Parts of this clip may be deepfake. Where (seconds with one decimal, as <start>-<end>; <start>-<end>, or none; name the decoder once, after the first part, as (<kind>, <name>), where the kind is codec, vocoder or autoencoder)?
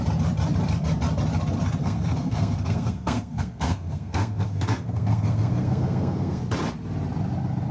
1.8-6.4 (codec, SNAC)